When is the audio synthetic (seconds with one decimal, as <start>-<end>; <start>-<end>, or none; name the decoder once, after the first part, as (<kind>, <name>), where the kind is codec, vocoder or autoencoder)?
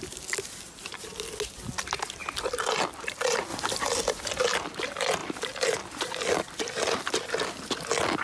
none